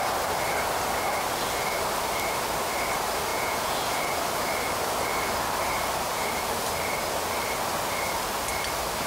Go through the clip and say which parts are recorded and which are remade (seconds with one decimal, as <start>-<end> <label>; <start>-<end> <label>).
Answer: 0.0-3.3 recorded; 3.3-4.2 remade; 4.2-9.1 recorded